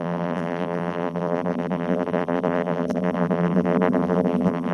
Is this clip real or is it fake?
fake